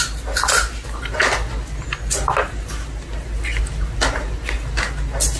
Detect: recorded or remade recorded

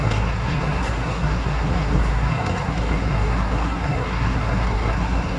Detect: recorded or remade remade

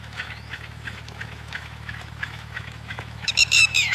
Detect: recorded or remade remade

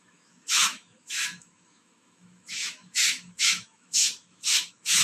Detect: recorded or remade remade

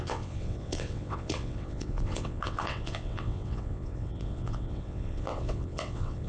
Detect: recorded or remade remade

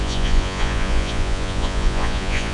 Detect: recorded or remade remade